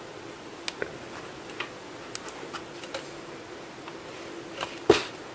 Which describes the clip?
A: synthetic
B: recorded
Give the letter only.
B